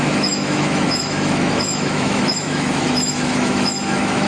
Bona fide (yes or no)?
no